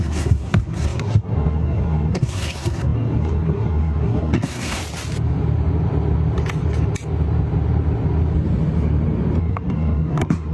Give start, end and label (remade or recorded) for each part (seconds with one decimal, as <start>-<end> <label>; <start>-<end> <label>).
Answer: 0.0-4.8 remade; 4.8-9.4 recorded; 9.4-10.5 remade